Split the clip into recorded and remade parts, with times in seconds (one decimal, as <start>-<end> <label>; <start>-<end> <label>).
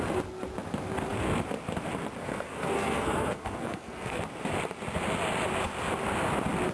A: 0.0-2.2 recorded; 2.2-4.2 remade; 4.2-6.7 recorded